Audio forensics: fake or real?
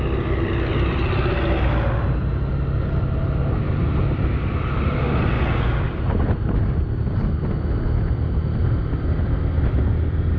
real